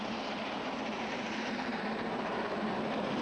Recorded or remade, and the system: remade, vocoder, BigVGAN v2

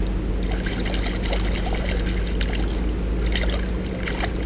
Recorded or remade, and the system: recorded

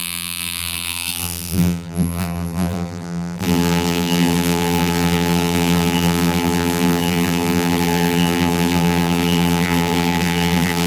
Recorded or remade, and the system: remade, vocoder, BigVGAN v2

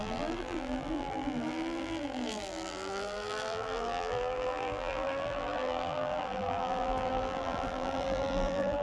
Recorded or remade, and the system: remade, vocoder, BigVGAN v2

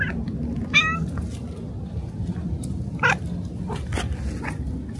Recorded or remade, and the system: recorded